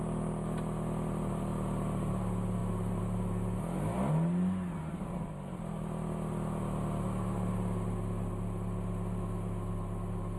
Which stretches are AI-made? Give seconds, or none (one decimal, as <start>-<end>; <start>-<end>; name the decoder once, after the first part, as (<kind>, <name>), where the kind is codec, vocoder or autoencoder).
none